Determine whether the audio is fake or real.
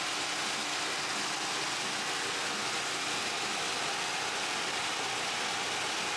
real